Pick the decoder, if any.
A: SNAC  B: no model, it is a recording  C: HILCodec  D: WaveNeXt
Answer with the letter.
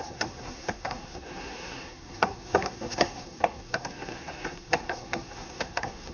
A